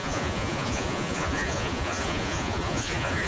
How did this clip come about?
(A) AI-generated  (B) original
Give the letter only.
A